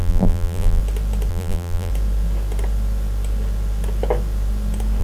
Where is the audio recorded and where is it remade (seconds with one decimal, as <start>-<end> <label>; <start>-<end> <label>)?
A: 0.0-0.8 remade; 0.8-1.3 recorded; 1.3-1.9 remade; 1.9-5.0 recorded